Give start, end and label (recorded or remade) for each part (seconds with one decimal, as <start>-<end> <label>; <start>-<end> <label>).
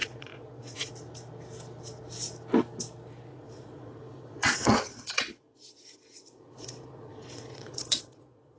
0.0-0.9 remade; 0.9-3.3 recorded; 3.3-8.6 remade